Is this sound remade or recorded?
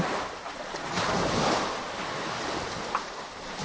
recorded